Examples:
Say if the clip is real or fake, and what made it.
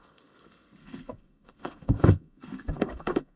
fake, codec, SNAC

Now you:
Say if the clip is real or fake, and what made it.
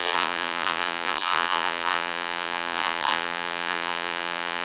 fake, vocoder, BigVGAN v2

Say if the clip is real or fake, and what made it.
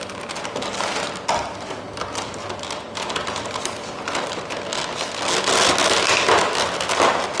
real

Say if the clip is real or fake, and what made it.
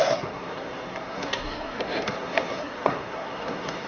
fake, codec, SNAC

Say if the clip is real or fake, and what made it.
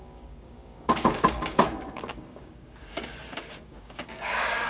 fake, codec, DAC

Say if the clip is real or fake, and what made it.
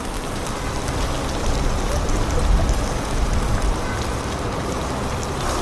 real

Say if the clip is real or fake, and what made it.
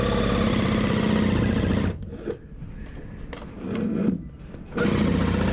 real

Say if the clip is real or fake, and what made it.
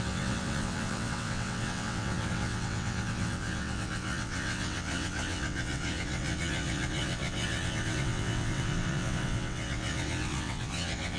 fake, vocoder, WaveNeXt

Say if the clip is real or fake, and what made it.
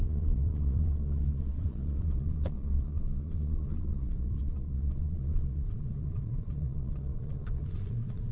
fake, vocoder, Vocos